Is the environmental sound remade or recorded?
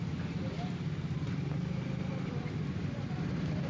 recorded